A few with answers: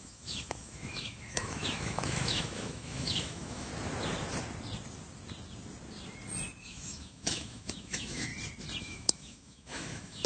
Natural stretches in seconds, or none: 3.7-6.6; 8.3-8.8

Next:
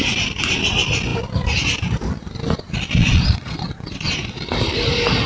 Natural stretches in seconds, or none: 0.0-3.0; 4.4-5.3

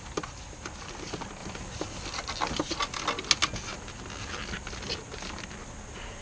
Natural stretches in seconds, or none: 0.0-6.2

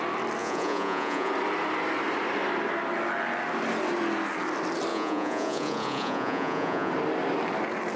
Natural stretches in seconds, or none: 0.0-0.4; 1.3-4.9; 6.9-8.0

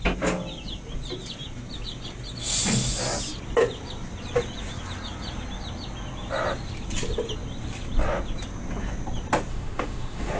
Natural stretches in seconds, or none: 0.0-9.5

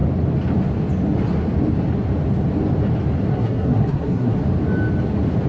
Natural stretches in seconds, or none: 0.0-3.3; 4.4-5.5

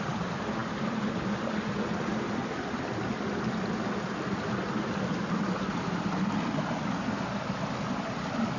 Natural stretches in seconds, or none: 0.0-8.6